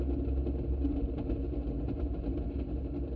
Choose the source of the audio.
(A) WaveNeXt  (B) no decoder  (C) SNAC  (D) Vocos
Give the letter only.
B